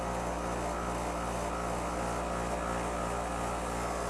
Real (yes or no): yes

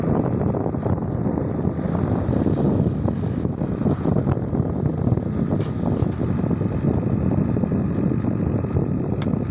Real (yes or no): yes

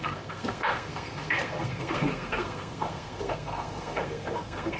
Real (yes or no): no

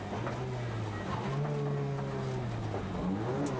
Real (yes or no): yes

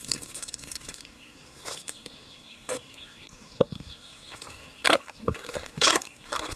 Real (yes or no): no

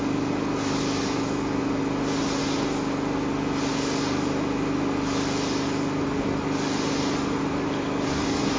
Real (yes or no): yes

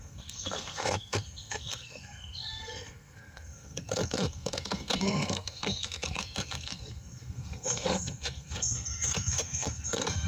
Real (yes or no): no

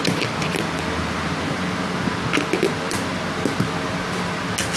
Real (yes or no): yes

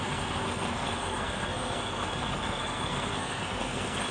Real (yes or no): no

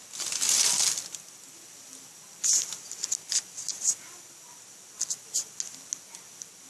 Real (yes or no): yes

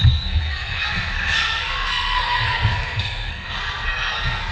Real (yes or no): no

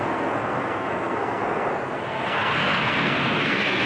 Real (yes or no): no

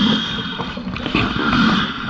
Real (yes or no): yes